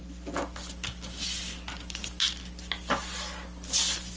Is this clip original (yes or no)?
yes